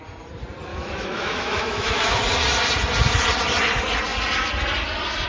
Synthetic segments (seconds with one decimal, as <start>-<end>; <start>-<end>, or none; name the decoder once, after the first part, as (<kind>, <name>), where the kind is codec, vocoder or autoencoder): 0.7-2.2 (autoencoder, DAC-VAE)